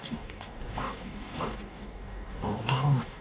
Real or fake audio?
fake